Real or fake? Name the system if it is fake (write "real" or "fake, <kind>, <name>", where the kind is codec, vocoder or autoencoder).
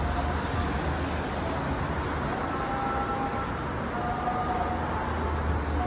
real